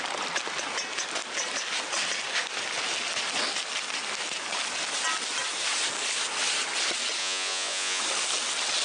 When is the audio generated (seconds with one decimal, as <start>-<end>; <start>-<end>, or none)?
7.2-8.0